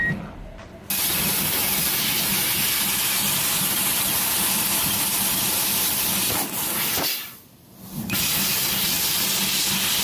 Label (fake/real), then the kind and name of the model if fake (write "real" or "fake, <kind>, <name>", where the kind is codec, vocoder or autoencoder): real